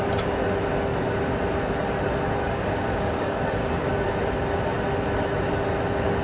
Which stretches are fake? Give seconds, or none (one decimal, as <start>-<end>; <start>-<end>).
2.4-3.9